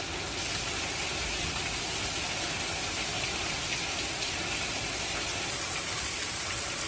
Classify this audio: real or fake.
real